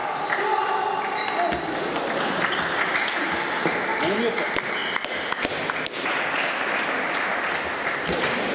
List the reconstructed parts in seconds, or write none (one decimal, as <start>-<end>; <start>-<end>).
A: none